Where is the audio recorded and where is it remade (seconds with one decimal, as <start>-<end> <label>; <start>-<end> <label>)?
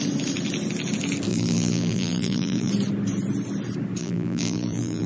0.0-1.3 recorded; 1.3-2.7 remade; 2.7-4.0 recorded; 4.0-5.1 remade